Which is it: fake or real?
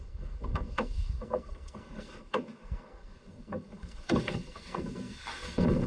fake